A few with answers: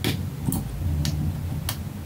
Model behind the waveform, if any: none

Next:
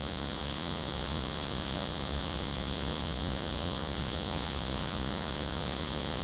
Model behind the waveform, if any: vocoder, Vocos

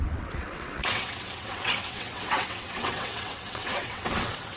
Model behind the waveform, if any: vocoder, WaveNeXt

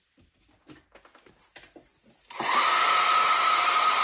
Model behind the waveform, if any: none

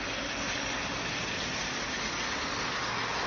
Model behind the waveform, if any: none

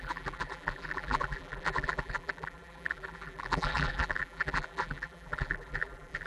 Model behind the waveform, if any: vocoder, BigVGAN v2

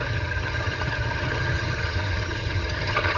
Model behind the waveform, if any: vocoder, HiFi-GAN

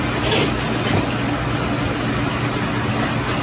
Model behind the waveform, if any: none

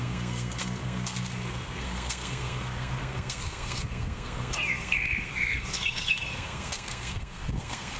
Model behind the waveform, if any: codec, SNAC